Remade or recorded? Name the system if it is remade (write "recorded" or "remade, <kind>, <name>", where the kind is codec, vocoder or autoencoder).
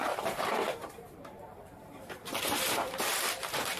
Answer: remade, vocoder, BigVGAN v2